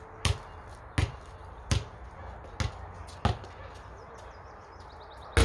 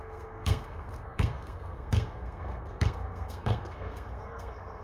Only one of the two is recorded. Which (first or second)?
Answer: first